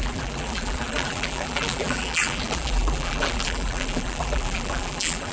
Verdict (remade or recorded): remade